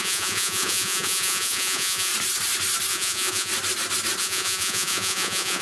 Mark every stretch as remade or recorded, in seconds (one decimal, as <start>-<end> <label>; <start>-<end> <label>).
0.0-2.1 remade; 2.1-2.9 recorded; 2.9-3.5 remade; 3.5-4.2 recorded; 4.2-5.6 remade